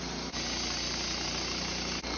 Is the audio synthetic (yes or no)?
no